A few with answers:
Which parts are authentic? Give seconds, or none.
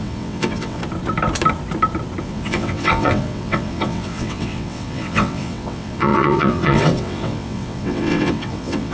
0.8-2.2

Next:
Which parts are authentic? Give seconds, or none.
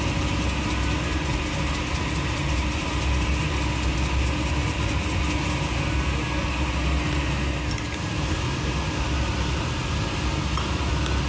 0.0-11.3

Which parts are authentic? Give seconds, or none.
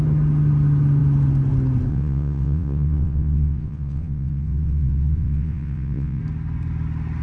0.0-1.9; 6.2-7.2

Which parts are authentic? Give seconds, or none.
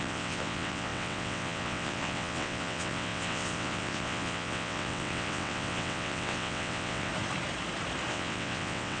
7.1-8.1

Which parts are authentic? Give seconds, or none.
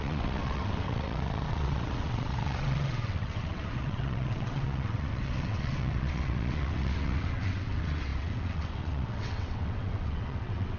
none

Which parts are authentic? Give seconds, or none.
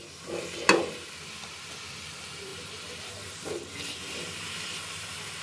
0.0-5.4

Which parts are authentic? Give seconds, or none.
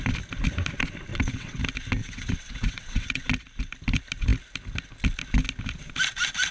0.0-1.1; 1.6-2.0; 3.3-6.5